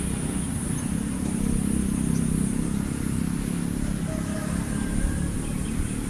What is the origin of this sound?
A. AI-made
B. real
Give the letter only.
B